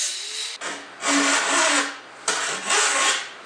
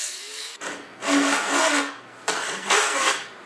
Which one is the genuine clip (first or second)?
first